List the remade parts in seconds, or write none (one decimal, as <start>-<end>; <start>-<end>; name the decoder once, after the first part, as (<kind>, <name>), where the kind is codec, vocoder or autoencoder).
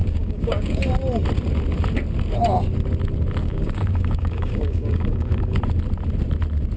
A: 0.0-0.8 (codec, DAC); 3.4-5.6